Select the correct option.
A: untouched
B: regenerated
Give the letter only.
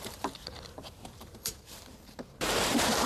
B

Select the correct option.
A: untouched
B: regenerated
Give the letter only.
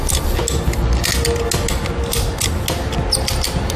A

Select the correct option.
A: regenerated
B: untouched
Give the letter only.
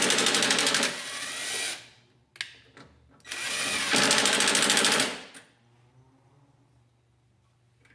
B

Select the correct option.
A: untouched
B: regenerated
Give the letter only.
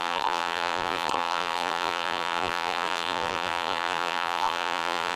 B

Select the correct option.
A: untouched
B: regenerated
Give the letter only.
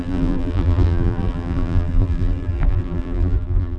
B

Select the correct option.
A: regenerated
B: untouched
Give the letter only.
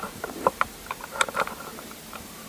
A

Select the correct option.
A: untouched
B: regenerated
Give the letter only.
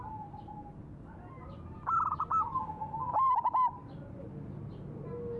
A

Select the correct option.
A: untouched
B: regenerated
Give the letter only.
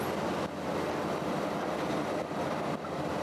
A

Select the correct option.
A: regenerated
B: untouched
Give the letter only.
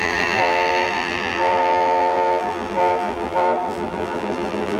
A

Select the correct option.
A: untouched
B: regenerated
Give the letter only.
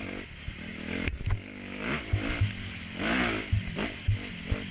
A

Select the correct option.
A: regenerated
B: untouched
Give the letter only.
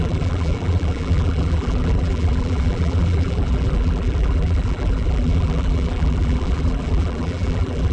A